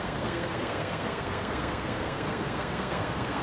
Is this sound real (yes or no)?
no